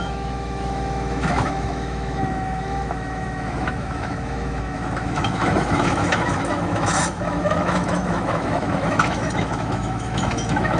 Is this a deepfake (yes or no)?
yes